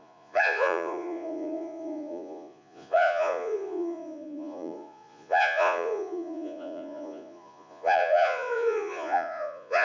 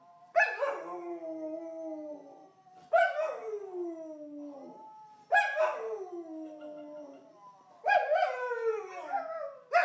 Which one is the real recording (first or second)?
second